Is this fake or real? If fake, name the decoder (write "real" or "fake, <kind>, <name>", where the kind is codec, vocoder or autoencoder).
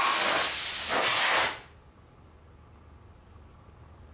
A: real